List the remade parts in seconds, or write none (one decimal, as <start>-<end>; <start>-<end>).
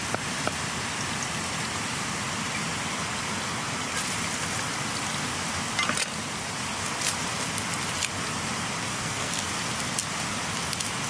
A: 8.9-9.5